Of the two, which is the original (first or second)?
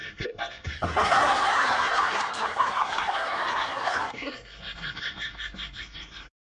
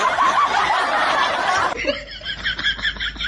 second